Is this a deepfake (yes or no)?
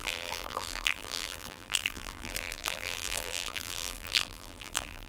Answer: yes